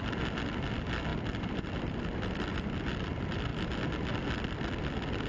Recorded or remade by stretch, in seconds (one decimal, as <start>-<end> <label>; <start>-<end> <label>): 0.0-1.1 recorded; 1.1-2.0 remade; 2.0-5.3 recorded